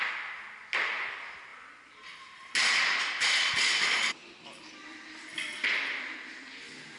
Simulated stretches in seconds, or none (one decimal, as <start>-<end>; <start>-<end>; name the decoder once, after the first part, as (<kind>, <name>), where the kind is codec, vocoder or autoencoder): none